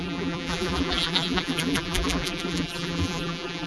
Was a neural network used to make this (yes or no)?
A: yes